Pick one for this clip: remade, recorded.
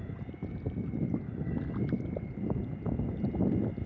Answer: recorded